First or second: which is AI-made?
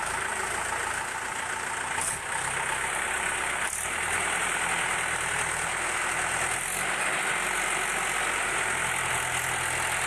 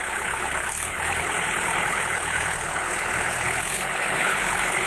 second